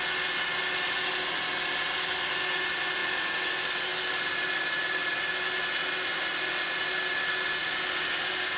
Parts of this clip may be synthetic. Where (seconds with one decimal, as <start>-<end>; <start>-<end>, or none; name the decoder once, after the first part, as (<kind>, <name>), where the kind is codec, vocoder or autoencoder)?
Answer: none